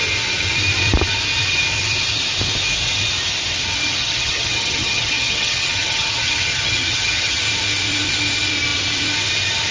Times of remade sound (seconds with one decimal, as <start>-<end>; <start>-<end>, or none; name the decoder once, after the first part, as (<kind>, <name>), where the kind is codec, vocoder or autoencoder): 4.0-7.4 (vocoder, HiFi-GAN)